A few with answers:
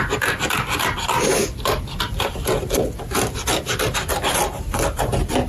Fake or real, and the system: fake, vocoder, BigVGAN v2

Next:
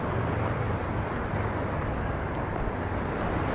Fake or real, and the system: real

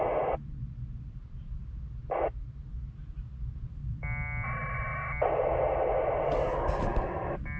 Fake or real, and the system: real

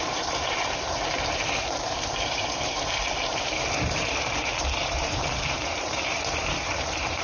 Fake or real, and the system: fake, vocoder, BigVGAN v2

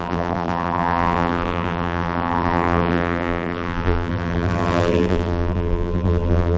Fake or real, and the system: fake, vocoder, BigVGAN v2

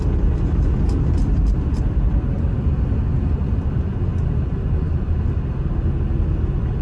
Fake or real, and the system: real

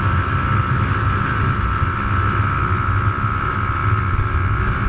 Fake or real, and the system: real